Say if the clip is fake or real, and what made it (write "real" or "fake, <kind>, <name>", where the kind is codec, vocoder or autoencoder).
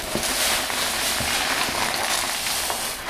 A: real